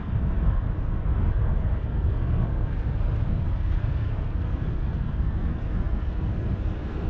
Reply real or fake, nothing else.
fake